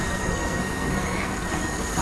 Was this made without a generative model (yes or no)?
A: no